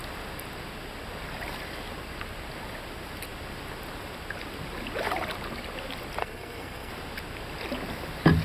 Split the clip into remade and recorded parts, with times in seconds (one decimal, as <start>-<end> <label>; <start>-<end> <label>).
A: 0.0-6.2 recorded; 6.2-6.9 remade; 6.9-8.4 recorded